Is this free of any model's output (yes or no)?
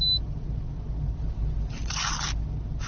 yes